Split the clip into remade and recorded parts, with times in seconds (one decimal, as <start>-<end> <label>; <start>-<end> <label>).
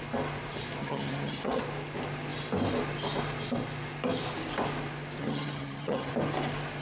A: 0.0-0.8 recorded; 0.8-1.6 remade; 1.6-5.2 recorded; 5.2-6.1 remade; 6.1-6.8 recorded